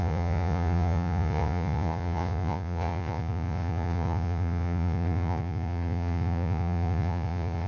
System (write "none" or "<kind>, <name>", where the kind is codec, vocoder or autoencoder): vocoder, Vocos